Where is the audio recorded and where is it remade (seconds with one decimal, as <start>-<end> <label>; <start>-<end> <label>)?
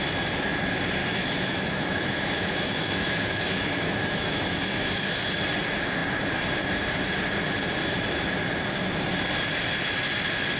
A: 0.0-1.0 recorded; 1.0-5.3 remade; 5.3-10.6 recorded